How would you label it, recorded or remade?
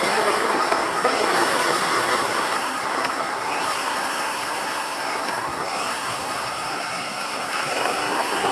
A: remade